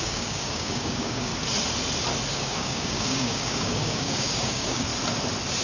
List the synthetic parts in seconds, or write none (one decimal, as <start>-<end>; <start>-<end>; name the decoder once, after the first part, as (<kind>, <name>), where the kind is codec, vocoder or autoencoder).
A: 0.0-1.3 (codec, DAC); 2.3-4.9